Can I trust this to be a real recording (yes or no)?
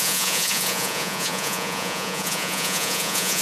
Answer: no